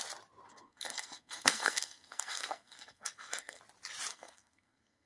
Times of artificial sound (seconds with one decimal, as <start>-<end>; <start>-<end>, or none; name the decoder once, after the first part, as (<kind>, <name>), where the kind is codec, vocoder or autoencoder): 0.5-3.6 (codec, SNAC); 4.1-5.1